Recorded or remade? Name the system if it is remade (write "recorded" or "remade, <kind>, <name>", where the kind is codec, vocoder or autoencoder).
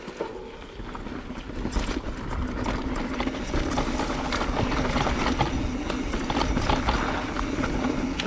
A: recorded